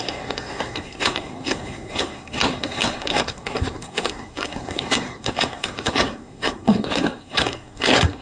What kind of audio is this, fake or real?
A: fake